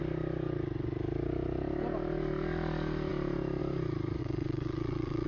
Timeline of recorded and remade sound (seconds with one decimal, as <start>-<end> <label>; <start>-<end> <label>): 0.0-4.2 recorded; 4.2-5.3 remade